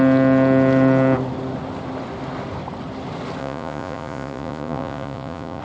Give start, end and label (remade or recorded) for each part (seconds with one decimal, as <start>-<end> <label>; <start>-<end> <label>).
0.0-3.4 recorded; 3.4-5.6 remade